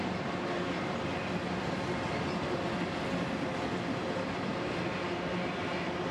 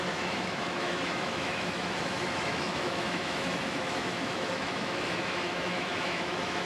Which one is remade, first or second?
second